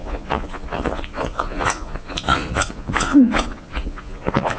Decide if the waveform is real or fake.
fake